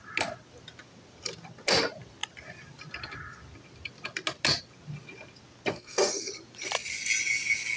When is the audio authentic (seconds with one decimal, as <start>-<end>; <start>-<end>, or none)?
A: 0.0-5.7; 6.3-7.8